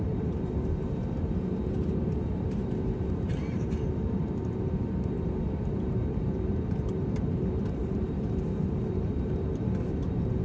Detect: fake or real fake